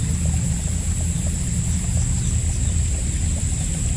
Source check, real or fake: real